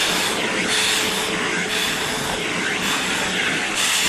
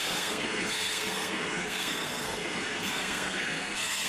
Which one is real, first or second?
first